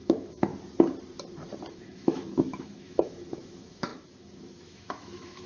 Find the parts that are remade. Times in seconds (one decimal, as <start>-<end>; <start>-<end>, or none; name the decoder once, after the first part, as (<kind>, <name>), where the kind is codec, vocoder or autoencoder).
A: 0.0-0.5 (autoencoder, DAC-VAE); 1.7-5.5